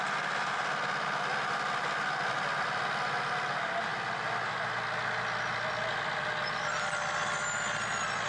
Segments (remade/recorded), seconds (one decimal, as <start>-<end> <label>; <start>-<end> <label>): 0.0-8.3 recorded